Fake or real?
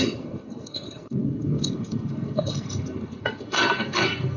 fake